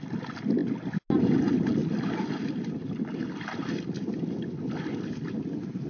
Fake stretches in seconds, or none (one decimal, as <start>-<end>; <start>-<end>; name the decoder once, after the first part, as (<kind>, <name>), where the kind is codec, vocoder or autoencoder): none